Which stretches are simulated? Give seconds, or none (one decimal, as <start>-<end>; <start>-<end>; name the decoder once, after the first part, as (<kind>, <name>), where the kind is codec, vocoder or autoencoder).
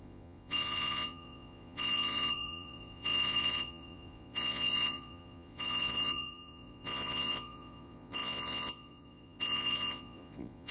0.0-10.7 (vocoder, Vocos)